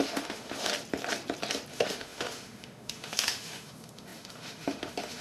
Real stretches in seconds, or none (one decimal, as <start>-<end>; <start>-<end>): 0.7-1.7

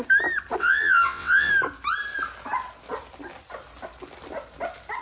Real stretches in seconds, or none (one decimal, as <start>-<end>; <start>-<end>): 0.0-0.6; 1.5-5.0

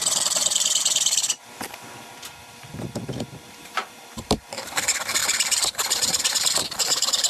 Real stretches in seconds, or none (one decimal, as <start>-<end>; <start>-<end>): none

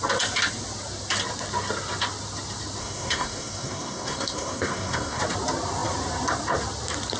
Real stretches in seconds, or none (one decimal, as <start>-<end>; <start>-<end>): 0.0-2.8; 5.2-7.2